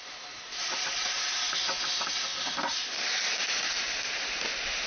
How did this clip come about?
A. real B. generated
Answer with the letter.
A